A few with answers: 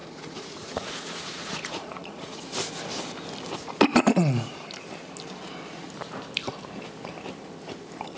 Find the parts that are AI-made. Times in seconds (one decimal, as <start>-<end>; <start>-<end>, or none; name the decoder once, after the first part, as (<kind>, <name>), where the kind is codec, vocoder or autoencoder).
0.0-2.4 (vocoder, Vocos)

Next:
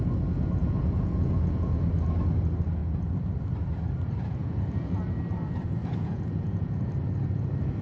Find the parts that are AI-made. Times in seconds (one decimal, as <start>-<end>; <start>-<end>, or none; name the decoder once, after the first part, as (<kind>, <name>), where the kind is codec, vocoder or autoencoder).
0.6-1.8 (vocoder, Vocos); 4.4-5.0; 5.8-6.9

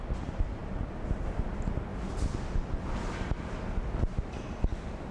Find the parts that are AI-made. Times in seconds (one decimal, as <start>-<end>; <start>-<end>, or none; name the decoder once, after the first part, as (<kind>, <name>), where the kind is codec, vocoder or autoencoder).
none